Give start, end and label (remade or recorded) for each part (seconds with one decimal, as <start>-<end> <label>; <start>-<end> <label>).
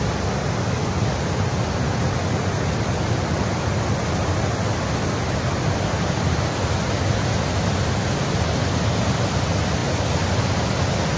0.0-11.2 recorded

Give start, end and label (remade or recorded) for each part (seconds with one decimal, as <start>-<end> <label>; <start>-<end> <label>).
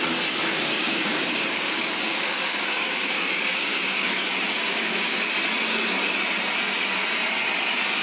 0.0-0.5 recorded; 0.5-5.3 remade; 5.3-8.0 recorded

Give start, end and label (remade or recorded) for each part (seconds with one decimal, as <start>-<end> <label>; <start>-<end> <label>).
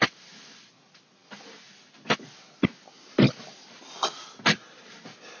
0.0-5.4 recorded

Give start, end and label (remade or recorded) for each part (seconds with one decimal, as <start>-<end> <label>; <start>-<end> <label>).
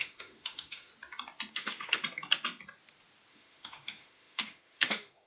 0.0-0.9 remade; 0.9-1.5 recorded; 1.5-2.0 remade; 2.0-3.3 recorded; 3.3-5.3 remade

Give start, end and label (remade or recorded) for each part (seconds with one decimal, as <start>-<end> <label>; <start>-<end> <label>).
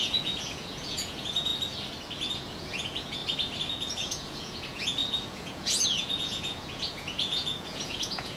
0.0-1.5 remade; 1.5-2.3 recorded; 2.3-3.2 remade; 3.2-3.7 recorded; 3.7-8.4 remade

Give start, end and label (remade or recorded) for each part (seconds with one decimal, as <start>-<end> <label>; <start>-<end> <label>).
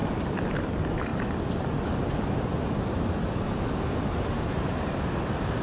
0.0-0.6 recorded; 0.6-1.1 remade; 1.1-4.5 recorded; 4.5-5.6 remade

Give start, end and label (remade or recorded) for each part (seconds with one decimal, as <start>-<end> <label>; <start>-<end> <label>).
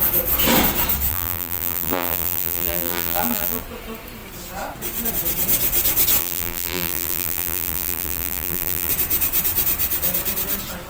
0.0-1.1 recorded; 1.1-3.6 remade; 3.6-6.2 recorded; 6.2-8.9 remade; 8.9-10.9 recorded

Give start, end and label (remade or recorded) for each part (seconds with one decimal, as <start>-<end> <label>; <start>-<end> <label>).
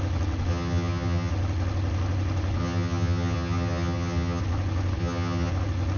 0.0-0.5 recorded; 0.5-1.3 remade; 1.3-2.6 recorded; 2.6-4.4 remade; 4.4-5.0 recorded; 5.0-5.5 remade; 5.5-6.0 recorded